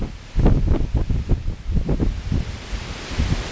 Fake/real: real